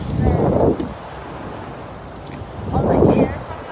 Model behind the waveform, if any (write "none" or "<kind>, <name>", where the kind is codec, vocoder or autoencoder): none